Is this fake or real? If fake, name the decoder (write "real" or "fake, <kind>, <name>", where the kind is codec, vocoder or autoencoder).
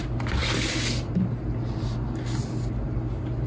real